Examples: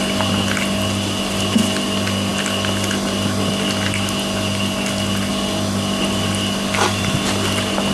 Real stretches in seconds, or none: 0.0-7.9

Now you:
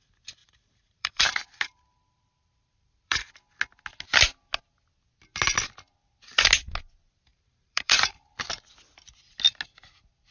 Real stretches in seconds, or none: 0.0-0.4; 3.3-7.3; 8.4-10.3

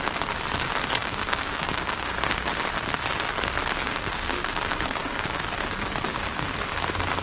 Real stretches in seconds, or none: 0.0-1.0; 2.5-3.8; 5.4-7.2

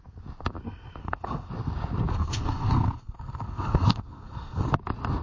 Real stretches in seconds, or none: 0.0-1.0; 1.5-2.1; 4.7-5.2

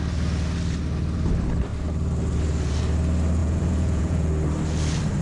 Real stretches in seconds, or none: 0.0-3.4; 4.3-5.2

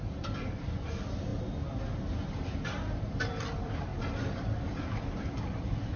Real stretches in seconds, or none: 1.3-2.1; 3.9-5.2